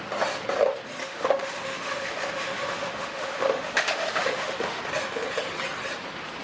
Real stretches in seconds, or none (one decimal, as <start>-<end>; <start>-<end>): 0.0-1.0; 4.8-6.4